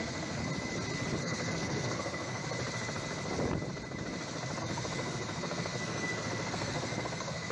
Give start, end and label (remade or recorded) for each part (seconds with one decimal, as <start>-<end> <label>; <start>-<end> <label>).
0.0-0.4 remade; 0.4-1.2 recorded; 1.2-2.4 remade; 2.4-4.6 recorded; 4.6-7.5 remade